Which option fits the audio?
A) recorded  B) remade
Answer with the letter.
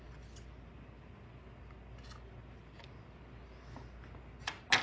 A